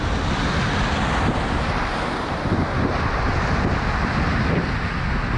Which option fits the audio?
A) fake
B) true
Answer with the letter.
B